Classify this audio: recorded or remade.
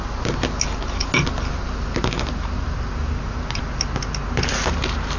recorded